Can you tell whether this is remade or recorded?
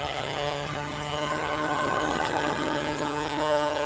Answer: remade